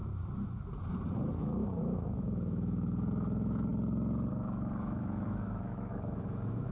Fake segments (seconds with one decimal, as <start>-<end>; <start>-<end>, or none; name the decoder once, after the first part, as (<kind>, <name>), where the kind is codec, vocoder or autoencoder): 1.3-3.7 (autoencoder, DAC-VAE); 4.3-6.7